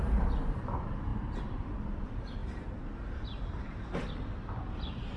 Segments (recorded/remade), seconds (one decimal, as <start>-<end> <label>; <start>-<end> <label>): 0.0-1.1 recorded; 1.1-1.8 remade; 1.8-2.4 recorded; 2.4-3.6 remade; 3.6-5.2 recorded